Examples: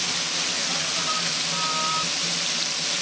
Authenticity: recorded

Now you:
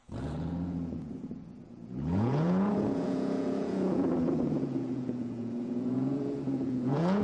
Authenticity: remade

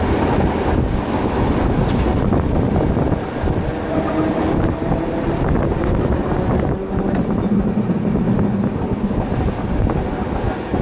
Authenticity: recorded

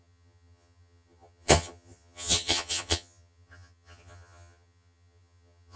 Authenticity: remade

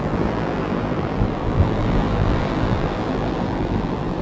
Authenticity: remade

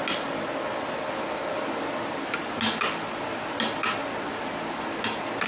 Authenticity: recorded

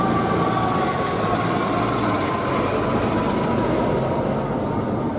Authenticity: recorded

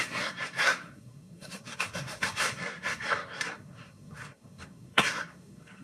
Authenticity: remade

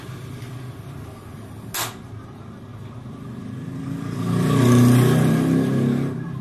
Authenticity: recorded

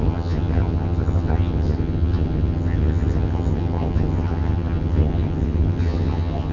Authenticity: remade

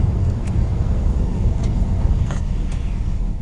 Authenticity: remade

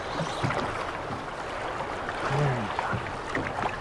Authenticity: recorded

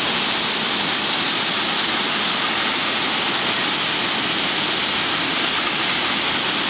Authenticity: recorded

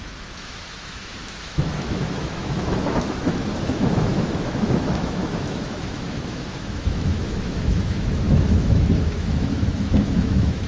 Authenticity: remade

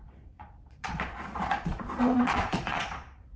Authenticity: remade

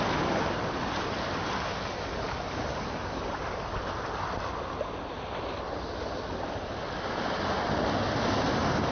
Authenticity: recorded